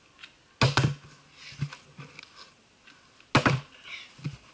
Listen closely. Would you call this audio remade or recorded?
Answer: recorded